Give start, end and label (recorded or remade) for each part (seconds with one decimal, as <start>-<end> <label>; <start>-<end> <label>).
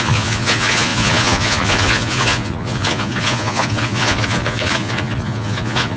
0.0-6.0 remade